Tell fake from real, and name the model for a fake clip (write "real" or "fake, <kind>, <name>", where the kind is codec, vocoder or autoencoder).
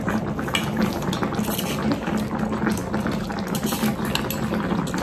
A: real